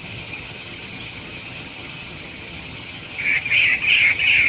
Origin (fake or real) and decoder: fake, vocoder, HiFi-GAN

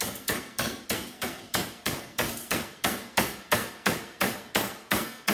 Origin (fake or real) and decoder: fake, codec, SNAC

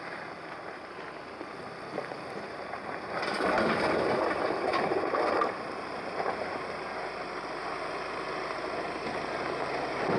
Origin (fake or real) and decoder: real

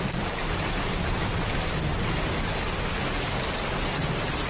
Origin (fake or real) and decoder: real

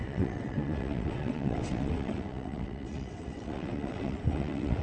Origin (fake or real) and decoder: fake, vocoder, WaveNeXt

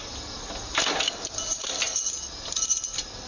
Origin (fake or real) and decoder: real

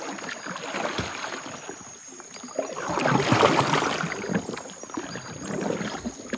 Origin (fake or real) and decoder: real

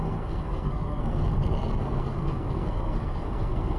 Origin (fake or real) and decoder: fake, codec, SNAC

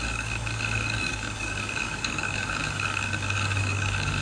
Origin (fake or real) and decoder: fake, codec, DAC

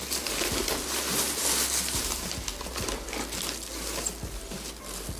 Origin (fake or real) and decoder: real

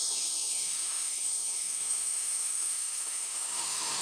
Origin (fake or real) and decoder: fake, autoencoder, DAC-VAE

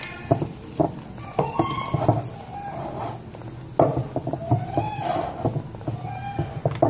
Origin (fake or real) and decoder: real